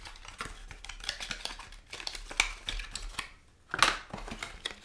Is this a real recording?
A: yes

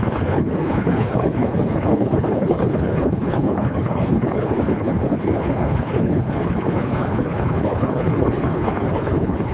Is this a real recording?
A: no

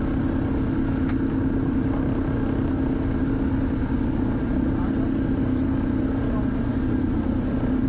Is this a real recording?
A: yes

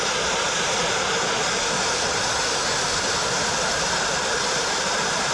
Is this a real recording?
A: yes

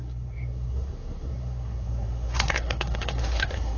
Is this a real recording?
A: no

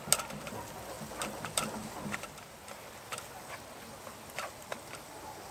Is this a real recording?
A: yes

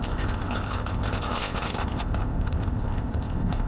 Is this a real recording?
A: no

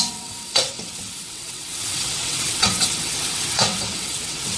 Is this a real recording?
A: no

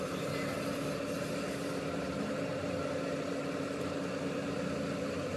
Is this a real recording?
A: yes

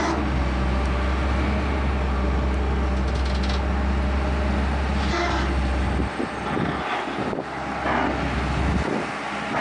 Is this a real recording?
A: yes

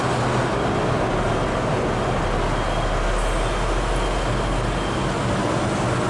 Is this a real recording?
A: yes